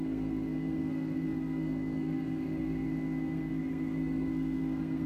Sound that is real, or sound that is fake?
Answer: fake